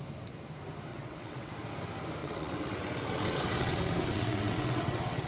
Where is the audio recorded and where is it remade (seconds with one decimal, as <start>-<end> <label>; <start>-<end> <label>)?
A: 0.0-0.9 recorded; 0.9-1.5 remade; 1.5-2.2 recorded; 2.2-5.3 remade